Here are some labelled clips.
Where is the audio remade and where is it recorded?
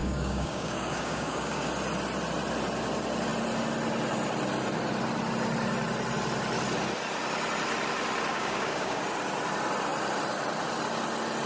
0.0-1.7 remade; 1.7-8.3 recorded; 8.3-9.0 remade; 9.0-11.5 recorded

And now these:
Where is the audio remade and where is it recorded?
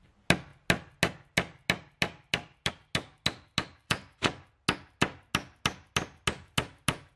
0.0-3.8 recorded; 3.8-4.5 remade; 4.5-7.2 recorded